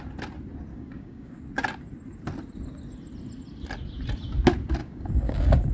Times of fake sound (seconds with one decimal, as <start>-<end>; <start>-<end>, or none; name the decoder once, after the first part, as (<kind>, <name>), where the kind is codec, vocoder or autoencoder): 0.7-1.4 (codec, DAC); 4.8-5.7